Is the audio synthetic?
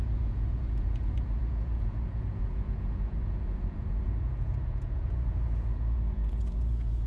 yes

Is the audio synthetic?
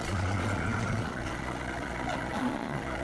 yes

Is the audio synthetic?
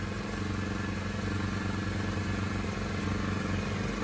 no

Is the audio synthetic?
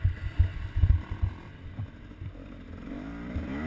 no